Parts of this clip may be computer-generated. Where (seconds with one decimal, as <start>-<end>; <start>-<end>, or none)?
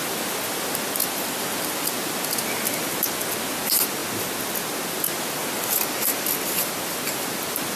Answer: none